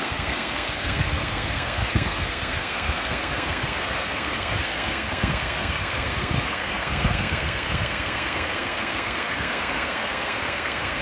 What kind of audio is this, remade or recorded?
remade